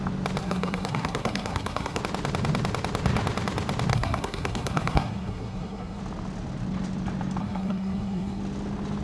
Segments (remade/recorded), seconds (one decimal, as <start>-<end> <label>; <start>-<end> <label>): 0.0-0.4 recorded; 0.4-2.0 remade; 2.0-3.9 recorded; 3.9-6.0 remade; 6.0-7.4 recorded; 7.4-8.4 remade; 8.4-9.0 recorded